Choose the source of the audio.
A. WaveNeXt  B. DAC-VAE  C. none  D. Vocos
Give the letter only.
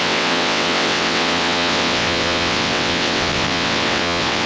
A